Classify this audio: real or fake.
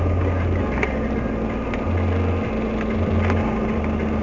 real